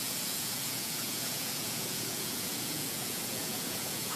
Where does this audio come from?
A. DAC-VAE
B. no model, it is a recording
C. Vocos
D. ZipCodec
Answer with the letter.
C